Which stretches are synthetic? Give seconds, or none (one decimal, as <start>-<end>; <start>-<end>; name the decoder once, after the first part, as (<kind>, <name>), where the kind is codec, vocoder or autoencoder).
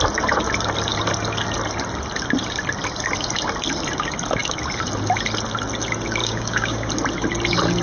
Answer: 6.2-6.9 (codec, DAC)